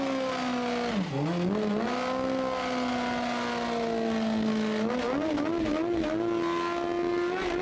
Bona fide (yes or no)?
yes